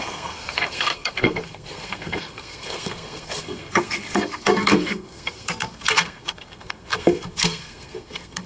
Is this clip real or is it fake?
fake